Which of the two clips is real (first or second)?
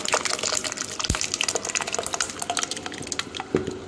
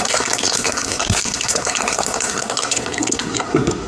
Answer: first